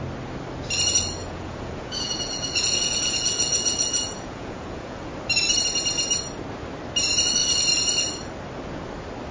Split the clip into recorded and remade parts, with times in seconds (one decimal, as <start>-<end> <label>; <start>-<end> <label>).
0.0-1.2 recorded; 1.2-5.1 remade; 5.1-9.3 recorded